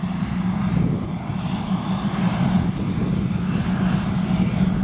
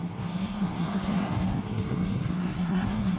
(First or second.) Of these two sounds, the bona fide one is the first